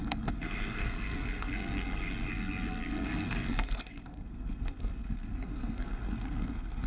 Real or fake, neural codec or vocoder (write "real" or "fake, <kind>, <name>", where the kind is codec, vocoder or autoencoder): fake, codec, SNAC